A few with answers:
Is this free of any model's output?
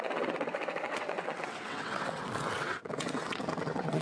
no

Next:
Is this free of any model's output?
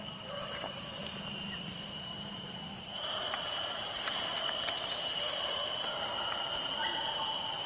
no